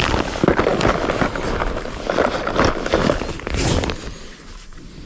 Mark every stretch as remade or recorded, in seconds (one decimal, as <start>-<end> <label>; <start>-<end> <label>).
0.0-5.1 recorded